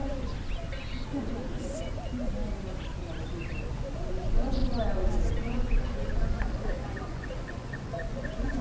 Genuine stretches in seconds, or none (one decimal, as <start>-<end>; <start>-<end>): 0.0-3.7; 4.6-5.4